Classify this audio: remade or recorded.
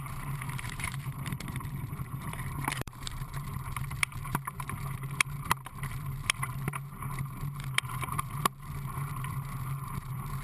remade